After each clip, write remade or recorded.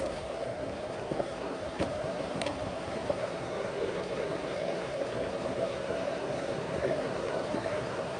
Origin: remade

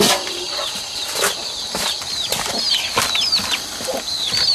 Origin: remade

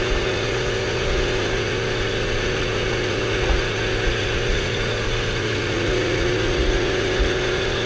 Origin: remade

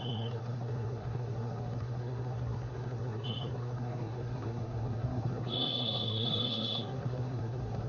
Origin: remade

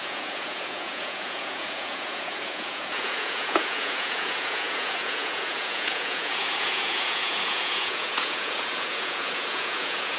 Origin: remade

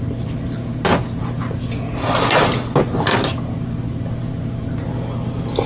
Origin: recorded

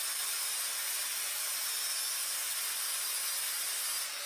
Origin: recorded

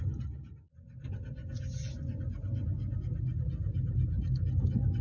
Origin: recorded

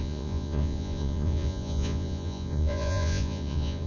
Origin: remade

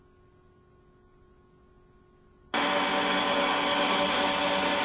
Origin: recorded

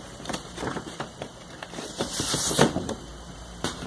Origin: remade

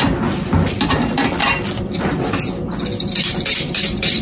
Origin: recorded